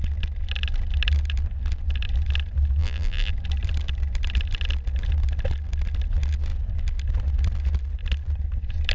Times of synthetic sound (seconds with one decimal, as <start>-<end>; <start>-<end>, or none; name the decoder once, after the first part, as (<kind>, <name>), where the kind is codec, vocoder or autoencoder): 2.8-3.3 (vocoder, BigVGAN v2)

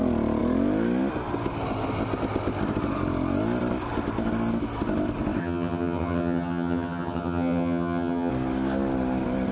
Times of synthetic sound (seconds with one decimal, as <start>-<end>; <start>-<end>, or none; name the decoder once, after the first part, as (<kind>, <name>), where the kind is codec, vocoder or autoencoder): 5.4-8.3 (vocoder, HiFi-GAN)

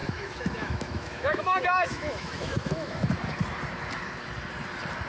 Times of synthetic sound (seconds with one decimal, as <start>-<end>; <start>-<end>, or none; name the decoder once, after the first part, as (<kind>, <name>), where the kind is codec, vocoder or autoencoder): 0.0-3.1 (autoencoder, DAC-VAE)